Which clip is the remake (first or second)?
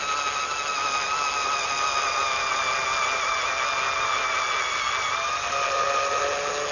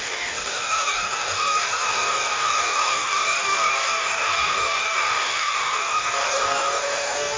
second